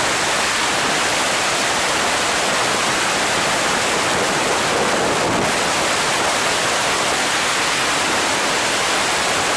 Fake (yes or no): no